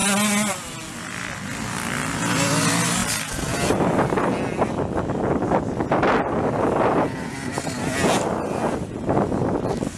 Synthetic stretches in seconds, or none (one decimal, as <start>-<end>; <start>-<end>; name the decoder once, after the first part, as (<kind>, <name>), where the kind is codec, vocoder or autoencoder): none